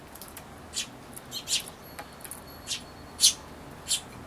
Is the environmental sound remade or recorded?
recorded